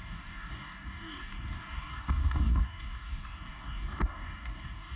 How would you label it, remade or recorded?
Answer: remade